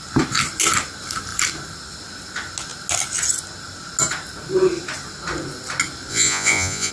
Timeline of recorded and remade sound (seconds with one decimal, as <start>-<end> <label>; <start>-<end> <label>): 0.0-6.1 recorded; 6.1-6.9 remade